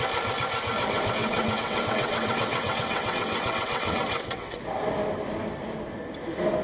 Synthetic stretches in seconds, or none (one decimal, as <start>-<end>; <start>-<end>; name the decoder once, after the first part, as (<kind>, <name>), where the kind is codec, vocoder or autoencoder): 1.2-4.6 (vocoder, WaveNeXt)